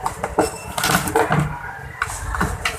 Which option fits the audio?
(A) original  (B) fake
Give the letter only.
A